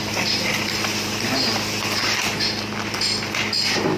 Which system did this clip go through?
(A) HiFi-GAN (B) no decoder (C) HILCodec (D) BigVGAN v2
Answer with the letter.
B